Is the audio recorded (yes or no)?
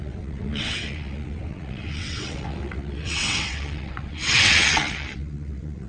no